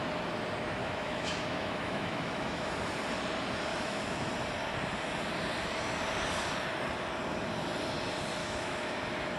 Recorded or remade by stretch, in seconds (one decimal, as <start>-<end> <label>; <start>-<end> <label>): 0.0-0.8 recorded; 0.8-2.7 remade; 2.7-3.7 recorded; 3.7-4.3 remade; 4.3-8.4 recorded; 8.4-9.0 remade; 9.0-9.4 recorded